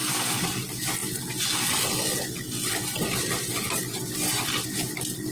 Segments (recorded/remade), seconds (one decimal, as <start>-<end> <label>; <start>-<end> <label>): 0.0-5.3 recorded